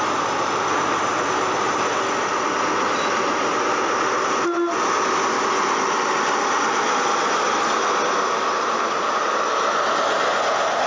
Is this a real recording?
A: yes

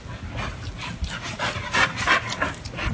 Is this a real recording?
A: yes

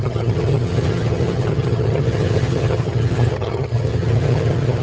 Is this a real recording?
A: no